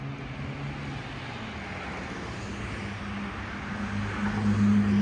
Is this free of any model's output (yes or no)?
yes